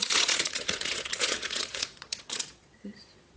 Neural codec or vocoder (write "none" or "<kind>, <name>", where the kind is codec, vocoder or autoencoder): vocoder, Vocos